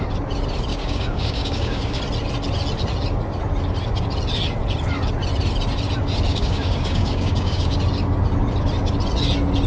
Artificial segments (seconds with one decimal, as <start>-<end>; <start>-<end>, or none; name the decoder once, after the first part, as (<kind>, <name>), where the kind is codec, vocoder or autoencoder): 0.7-2.0 (codec, DAC); 6.3-7.8